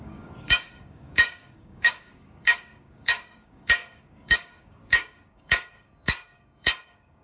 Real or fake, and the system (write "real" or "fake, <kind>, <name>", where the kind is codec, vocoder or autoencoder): fake, codec, DAC